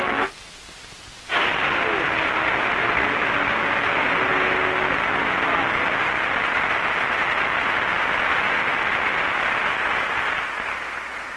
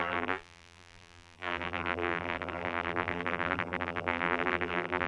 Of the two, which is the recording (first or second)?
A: first